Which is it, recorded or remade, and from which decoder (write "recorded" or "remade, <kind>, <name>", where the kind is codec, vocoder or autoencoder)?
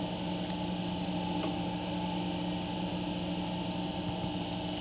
recorded